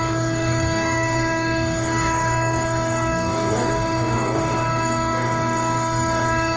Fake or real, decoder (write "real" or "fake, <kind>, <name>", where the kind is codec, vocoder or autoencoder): fake, codec, DAC